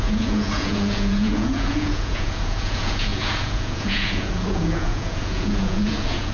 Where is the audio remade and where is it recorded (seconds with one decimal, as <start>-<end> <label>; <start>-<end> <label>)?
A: 0.0-6.3 remade